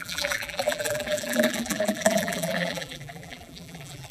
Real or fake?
fake